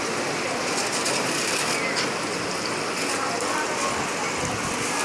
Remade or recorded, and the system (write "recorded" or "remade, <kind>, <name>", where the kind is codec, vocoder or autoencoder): recorded